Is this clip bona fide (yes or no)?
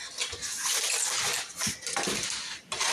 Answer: yes